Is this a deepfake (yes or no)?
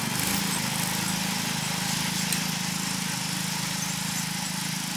no